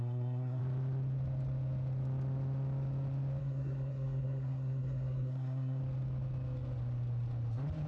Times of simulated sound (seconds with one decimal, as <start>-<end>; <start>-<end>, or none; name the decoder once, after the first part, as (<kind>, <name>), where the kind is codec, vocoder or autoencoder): 0.0-0.6 (codec, SNAC); 3.4-5.8